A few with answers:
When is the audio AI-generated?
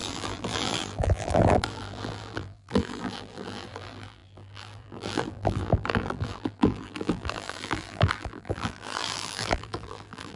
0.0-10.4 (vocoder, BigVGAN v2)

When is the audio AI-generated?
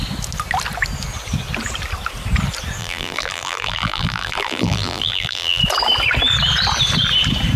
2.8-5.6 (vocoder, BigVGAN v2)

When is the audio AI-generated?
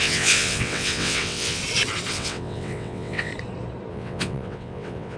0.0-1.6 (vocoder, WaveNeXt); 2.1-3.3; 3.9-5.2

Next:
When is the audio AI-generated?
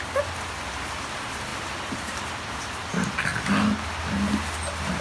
none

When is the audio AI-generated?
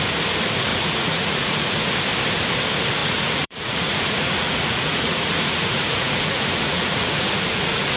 0.7-1.9 (vocoder, Vocos); 3.0-8.0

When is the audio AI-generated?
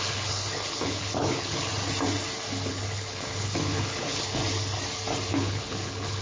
0.0-1.7 (codec, HILCodec); 2.7-4.4; 5.3-6.2